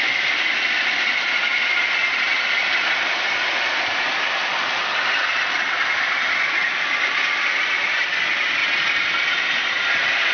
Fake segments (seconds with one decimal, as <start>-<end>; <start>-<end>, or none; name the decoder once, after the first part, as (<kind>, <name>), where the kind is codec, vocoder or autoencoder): 0.0-1.5 (vocoder, BigVGAN v2); 3.6-4.5; 7.9-8.6; 9.3-10.3